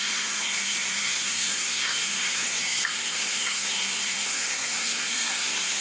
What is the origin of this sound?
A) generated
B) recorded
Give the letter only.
A